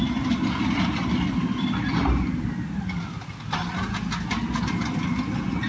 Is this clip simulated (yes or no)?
no